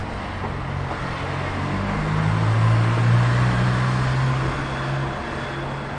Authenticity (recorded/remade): recorded